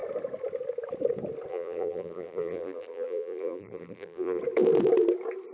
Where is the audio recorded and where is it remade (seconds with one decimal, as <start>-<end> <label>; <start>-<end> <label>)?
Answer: 0.0-1.5 recorded; 1.5-4.4 remade; 4.4-5.5 recorded